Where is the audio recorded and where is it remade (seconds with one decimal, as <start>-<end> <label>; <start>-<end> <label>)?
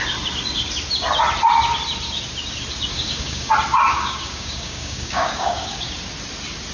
0.0-2.9 recorded; 2.9-3.5 remade; 3.5-3.9 recorded; 3.9-5.9 remade; 5.9-6.7 recorded